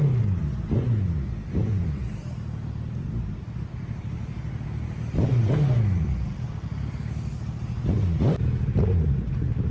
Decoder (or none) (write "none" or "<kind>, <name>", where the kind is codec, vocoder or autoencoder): none